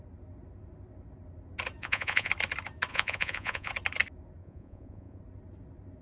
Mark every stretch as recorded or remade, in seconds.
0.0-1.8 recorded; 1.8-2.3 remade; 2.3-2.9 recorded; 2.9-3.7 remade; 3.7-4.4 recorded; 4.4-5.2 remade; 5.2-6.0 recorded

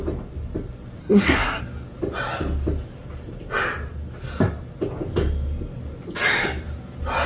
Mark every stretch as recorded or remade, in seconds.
0.0-1.0 recorded; 1.0-1.6 remade; 1.6-7.3 recorded

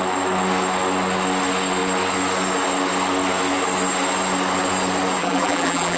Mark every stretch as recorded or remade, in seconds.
0.0-5.2 recorded; 5.2-6.0 remade